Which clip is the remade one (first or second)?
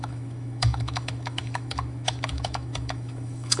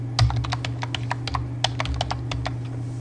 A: first